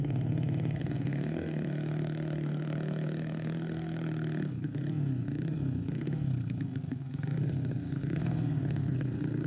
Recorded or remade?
remade